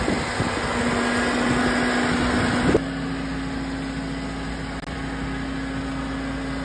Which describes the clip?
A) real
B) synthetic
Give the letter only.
A